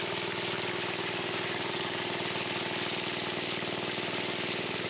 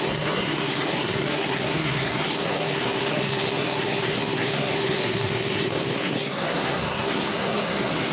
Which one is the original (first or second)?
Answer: first